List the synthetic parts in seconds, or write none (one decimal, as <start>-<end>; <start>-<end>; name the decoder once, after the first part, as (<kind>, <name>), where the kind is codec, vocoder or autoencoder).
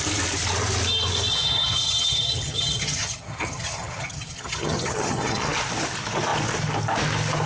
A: 1.3-5.5 (vocoder, HiFi-GAN)